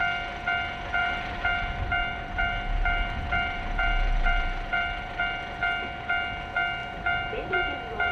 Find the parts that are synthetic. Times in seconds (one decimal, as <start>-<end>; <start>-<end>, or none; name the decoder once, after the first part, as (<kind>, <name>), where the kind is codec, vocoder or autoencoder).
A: 1.0-5.2 (vocoder, BigVGAN v2); 6.8-8.1

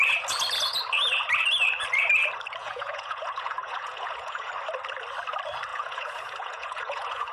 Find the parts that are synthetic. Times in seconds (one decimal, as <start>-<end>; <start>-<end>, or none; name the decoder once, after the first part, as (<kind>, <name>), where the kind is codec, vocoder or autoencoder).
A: 2.6-4.5 (vocoder, Vocos); 5.7-7.3

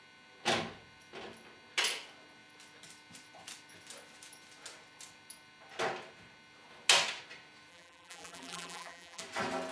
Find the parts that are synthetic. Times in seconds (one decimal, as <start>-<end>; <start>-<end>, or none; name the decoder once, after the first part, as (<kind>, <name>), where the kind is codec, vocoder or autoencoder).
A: 7.7-9.2 (vocoder, BigVGAN v2)

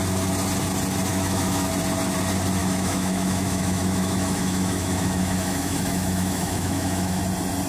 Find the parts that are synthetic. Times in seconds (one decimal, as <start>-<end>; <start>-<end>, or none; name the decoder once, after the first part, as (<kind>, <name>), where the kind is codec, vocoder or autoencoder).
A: 1.1-1.7 (autoencoder, DAC-VAE); 2.6-7.2

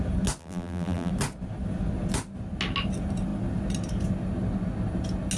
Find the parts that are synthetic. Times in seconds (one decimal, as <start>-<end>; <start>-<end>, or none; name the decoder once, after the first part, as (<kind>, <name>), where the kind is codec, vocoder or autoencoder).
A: 0.4-1.1 (vocoder, BigVGAN v2)

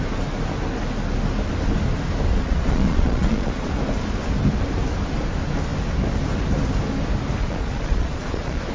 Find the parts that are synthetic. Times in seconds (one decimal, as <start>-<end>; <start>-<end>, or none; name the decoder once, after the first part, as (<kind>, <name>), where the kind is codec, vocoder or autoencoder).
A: 2.3-3.7 (vocoder, Vocos); 7.4-8.7